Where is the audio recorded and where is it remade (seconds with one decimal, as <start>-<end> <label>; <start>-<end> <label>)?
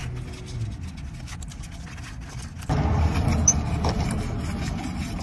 0.0-5.2 recorded